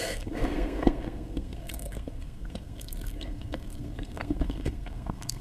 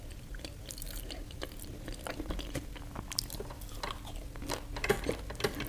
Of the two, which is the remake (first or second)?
first